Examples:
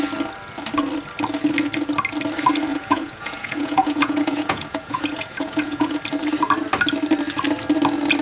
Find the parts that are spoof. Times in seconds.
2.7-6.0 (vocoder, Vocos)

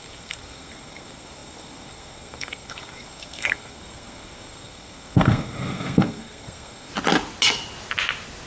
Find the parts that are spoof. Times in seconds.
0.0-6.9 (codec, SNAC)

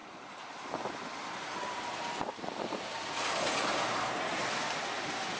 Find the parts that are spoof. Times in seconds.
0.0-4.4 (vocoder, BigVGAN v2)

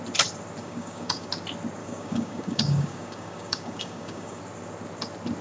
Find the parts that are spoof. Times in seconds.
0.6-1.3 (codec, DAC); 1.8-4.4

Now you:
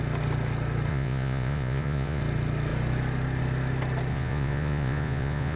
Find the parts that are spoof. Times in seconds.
0.9-2.2 (vocoder, Vocos); 4.1-5.6